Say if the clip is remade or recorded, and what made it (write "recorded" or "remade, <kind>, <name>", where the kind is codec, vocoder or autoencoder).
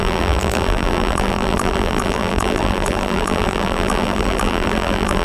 remade, vocoder, BigVGAN v2